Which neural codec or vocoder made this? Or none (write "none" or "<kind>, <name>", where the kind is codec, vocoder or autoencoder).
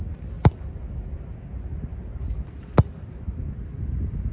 none